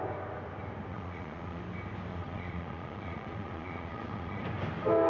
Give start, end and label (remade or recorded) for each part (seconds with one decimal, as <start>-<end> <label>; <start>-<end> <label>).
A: 0.0-0.9 recorded; 0.9-1.6 remade; 1.6-2.1 recorded; 2.1-4.4 remade; 4.4-5.1 recorded